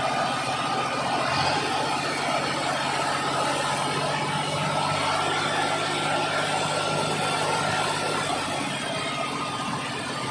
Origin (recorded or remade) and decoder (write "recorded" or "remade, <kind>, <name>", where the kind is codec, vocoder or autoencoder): recorded